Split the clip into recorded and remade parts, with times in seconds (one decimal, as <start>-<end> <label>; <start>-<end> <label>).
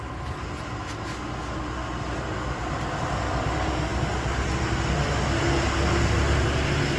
0.0-7.0 recorded